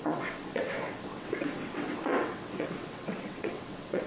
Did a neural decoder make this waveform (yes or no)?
yes